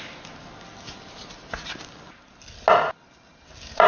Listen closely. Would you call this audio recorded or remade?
recorded